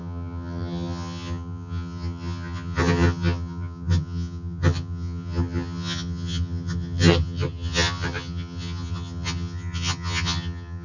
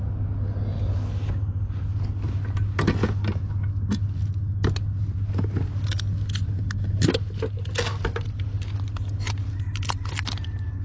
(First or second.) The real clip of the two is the second